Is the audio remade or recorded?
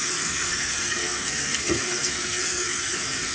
remade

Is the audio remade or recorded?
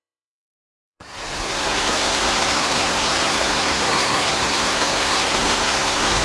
remade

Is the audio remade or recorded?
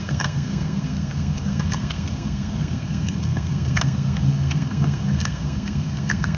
remade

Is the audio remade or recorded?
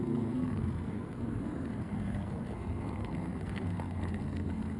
remade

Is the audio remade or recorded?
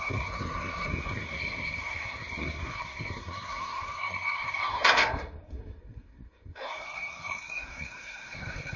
remade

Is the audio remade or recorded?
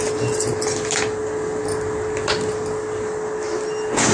recorded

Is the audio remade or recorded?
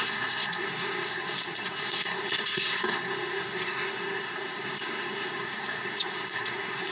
remade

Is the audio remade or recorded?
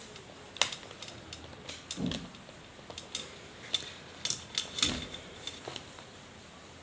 recorded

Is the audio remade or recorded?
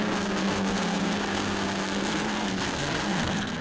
remade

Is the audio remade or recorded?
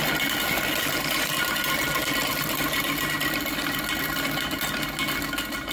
recorded